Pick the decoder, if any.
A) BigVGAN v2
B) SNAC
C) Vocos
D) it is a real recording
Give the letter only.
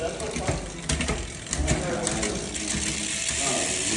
D